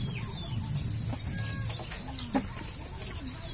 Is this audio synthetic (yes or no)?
no